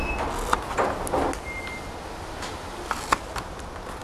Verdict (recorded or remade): recorded